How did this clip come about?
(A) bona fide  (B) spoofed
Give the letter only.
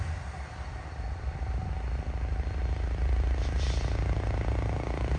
B